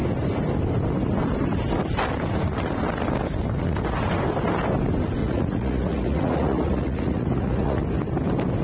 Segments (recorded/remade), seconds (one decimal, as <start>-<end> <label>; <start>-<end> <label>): 0.0-5.2 recorded; 5.2-7.8 remade; 7.8-8.6 recorded